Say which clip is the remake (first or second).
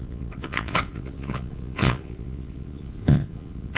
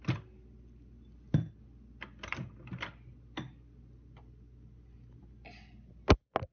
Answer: first